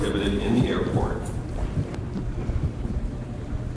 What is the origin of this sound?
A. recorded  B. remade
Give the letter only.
B